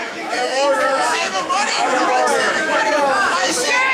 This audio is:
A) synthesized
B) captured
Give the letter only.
A